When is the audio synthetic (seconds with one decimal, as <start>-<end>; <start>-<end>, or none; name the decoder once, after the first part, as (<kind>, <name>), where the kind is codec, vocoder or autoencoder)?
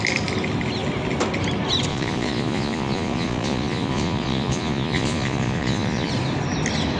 1.9-6.1 (vocoder, Vocos)